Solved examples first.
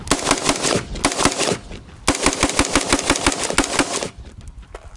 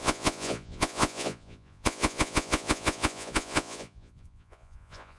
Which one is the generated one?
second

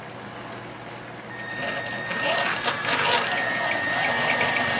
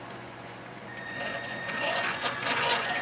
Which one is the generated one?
second